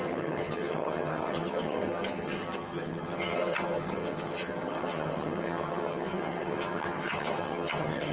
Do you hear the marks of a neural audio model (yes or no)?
yes